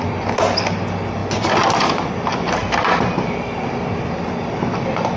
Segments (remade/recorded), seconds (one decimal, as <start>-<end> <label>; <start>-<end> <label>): 0.0-5.2 recorded